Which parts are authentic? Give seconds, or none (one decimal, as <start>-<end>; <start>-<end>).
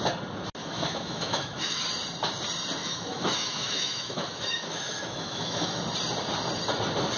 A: 0.0-0.6; 1.8-2.8; 5.8-7.2